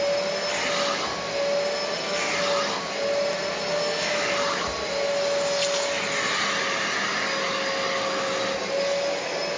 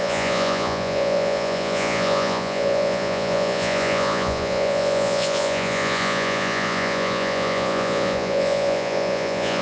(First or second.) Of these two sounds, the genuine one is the first